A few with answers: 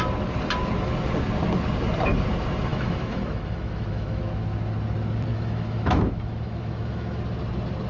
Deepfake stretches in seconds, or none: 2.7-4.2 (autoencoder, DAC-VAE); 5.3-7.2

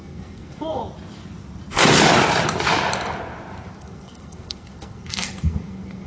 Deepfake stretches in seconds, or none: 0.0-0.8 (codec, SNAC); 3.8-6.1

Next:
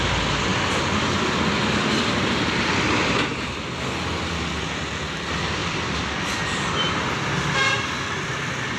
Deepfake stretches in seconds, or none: 0.5-1.6 (vocoder, BigVGAN v2); 5.6-7.1